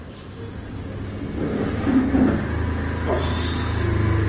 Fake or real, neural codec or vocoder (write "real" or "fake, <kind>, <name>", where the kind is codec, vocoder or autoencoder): real